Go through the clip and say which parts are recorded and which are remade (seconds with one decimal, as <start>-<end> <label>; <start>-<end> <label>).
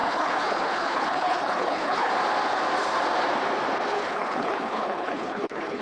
0.0-2.1 remade; 2.1-3.9 recorded; 3.9-5.8 remade